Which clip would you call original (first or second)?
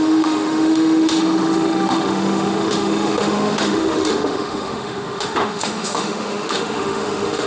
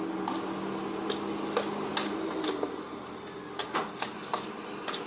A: second